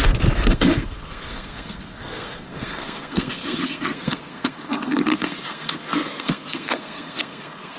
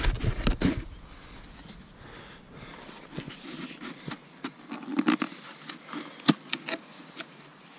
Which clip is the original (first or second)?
second